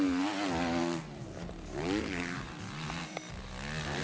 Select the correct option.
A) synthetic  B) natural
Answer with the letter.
B